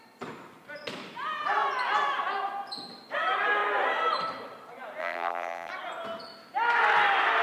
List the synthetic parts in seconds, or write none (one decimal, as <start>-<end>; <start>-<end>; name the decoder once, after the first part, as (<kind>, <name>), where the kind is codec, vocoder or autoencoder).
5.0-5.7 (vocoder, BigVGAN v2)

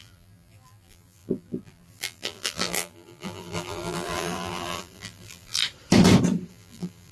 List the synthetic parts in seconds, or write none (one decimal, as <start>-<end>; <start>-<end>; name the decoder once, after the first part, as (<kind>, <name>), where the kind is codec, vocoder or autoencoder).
0.0-5.6 (vocoder, BigVGAN v2); 6.5-7.1

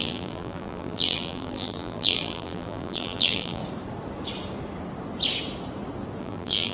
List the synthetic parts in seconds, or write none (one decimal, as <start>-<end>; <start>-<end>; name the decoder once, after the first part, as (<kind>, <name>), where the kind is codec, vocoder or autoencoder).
0.0-3.6 (vocoder, BigVGAN v2); 6.2-6.7

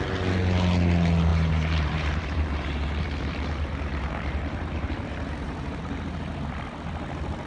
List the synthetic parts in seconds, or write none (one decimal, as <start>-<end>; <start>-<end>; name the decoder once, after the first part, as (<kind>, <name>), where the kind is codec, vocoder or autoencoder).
1.3-5.8 (vocoder, BigVGAN v2)